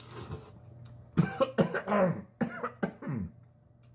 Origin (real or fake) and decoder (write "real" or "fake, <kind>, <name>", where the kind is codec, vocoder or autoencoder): real